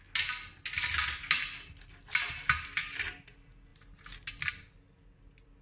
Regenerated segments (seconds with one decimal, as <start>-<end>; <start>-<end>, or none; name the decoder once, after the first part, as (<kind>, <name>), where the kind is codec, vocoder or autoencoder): none